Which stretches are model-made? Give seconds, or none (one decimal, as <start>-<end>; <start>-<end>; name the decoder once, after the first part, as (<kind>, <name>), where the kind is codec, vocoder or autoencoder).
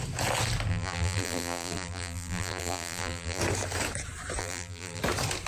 0.7-3.4 (vocoder, BigVGAN v2); 4.4-5.0